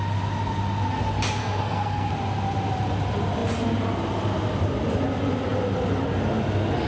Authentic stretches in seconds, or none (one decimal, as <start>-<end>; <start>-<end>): 0.0-1.4; 2.1-6.9